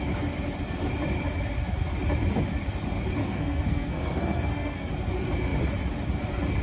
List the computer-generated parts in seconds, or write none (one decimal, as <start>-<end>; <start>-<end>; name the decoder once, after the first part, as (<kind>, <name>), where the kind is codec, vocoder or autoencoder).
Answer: 3.2-4.9 (codec, SNAC)